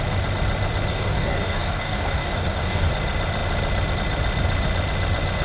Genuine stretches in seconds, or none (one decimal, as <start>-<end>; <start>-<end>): 0.0-0.9; 2.9-5.4